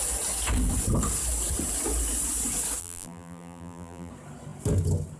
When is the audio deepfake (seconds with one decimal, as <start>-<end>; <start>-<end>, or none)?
2.8-4.1